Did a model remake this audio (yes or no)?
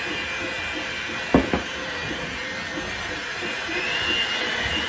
no